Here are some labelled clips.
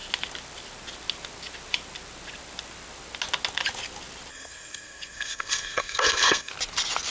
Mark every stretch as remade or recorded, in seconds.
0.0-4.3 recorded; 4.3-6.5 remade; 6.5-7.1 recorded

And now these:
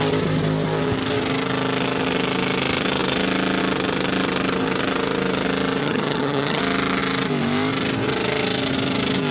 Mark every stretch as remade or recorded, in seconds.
0.0-5.8 recorded; 5.8-6.6 remade; 6.6-9.3 recorded

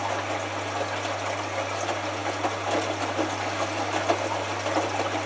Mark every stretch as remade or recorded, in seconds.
0.0-5.3 recorded

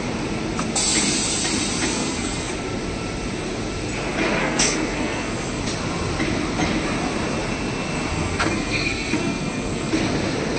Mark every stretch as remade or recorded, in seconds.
0.0-1.9 recorded; 1.9-2.5 remade; 2.5-4.4 recorded; 4.4-5.6 remade; 5.6-8.1 recorded; 8.1-9.9 remade; 9.9-10.6 recorded

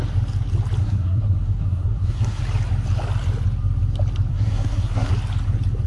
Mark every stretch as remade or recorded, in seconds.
0.0-0.8 recorded; 0.8-2.4 remade; 2.4-4.3 recorded; 4.3-5.1 remade; 5.1-5.9 recorded

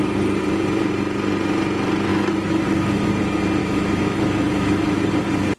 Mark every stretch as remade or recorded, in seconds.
0.0-2.1 recorded; 2.1-3.1 remade; 3.1-3.6 recorded; 3.6-5.1 remade; 5.1-5.6 recorded

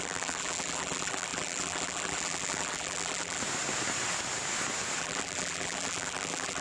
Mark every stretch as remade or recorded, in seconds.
0.0-3.4 remade; 3.4-5.0 recorded; 5.0-6.6 remade